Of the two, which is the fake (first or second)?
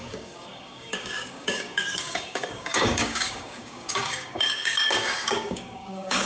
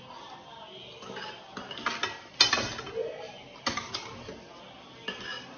first